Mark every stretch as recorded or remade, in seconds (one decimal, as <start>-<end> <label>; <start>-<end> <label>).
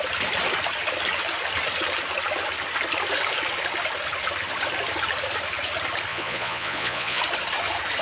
0.0-6.1 recorded; 6.1-7.2 remade; 7.2-8.0 recorded